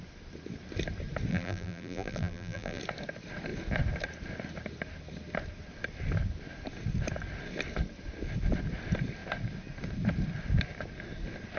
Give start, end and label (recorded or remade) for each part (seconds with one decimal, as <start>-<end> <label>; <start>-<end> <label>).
0.0-1.3 recorded; 1.3-2.8 remade; 2.8-11.6 recorded